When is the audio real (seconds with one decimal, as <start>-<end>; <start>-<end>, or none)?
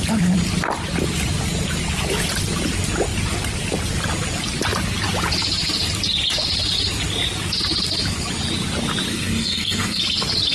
0.0-9.1; 10.0-10.5